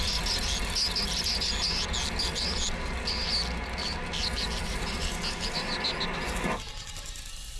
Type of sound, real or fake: real